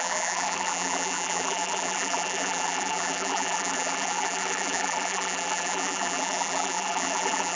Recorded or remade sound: remade